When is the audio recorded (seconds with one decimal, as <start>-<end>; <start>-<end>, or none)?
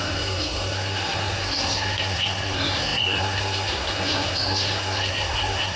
none